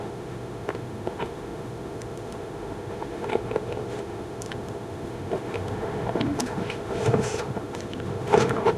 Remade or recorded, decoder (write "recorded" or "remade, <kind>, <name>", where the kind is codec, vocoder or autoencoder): remade, autoencoder, DAC-VAE